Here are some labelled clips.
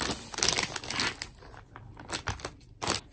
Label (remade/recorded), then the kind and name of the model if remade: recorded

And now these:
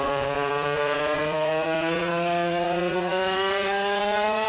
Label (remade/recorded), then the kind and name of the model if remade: remade, vocoder, Vocos